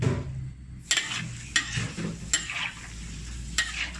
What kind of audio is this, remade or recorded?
recorded